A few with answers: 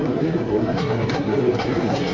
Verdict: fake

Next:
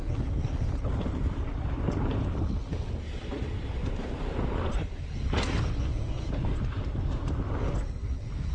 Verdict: real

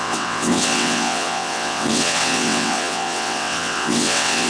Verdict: fake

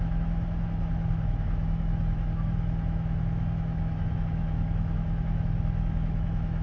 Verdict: fake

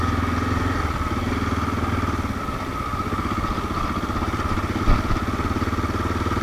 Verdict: real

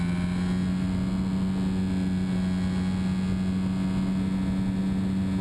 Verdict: real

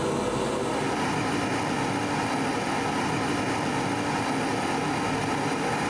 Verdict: real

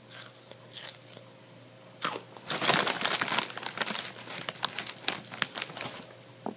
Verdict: real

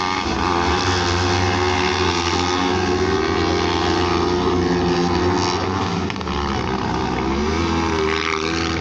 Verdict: real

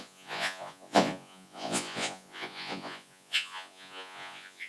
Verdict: fake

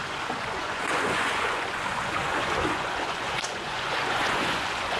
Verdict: fake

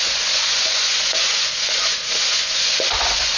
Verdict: fake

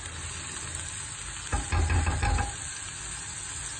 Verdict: real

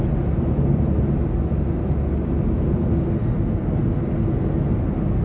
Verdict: real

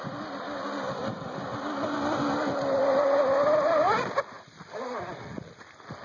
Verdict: real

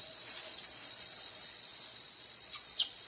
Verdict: fake